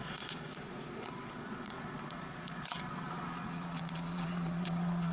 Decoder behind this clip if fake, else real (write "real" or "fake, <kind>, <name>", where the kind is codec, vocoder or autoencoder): fake, vocoder, Vocos